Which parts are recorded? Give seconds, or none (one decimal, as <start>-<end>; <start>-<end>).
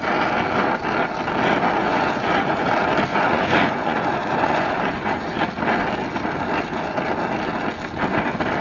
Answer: 0.0-1.8; 2.7-3.1; 5.4-8.6